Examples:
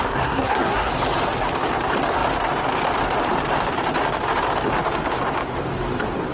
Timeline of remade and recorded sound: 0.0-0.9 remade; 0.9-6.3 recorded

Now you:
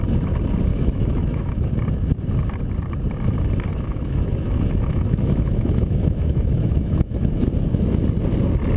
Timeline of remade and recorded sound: 0.0-0.7 recorded; 0.7-1.7 remade; 1.7-3.7 recorded; 3.7-7.4 remade; 7.4-8.8 recorded

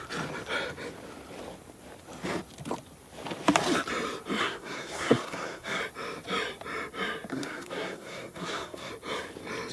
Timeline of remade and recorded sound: 0.0-4.4 recorded; 4.4-5.8 remade; 5.8-7.3 recorded; 7.3-8.9 remade; 8.9-9.7 recorded

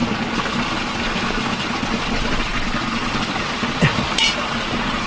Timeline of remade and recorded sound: 0.0-5.1 recorded

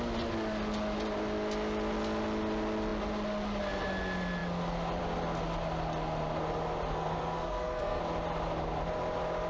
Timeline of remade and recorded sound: 0.0-6.9 recorded; 6.9-8.0 remade; 8.0-9.5 recorded

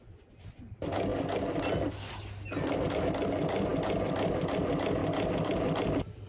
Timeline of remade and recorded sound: 0.0-6.3 recorded